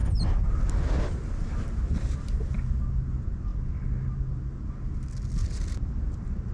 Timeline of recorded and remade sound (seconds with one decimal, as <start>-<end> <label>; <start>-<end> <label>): 0.0-6.5 recorded